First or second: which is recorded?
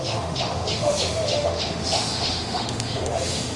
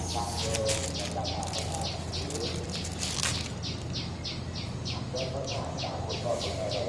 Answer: second